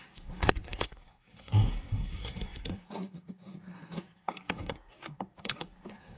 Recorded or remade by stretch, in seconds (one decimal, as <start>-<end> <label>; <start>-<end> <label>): 0.0-6.2 remade